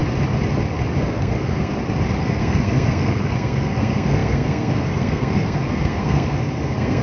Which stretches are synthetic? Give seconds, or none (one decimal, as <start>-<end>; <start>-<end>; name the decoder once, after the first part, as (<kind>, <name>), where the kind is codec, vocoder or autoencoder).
1.0-1.7 (codec, SNAC); 2.2-7.0